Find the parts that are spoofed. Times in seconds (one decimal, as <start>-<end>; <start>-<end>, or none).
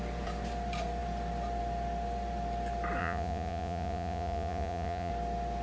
3.0-5.1